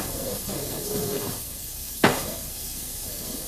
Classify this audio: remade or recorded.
remade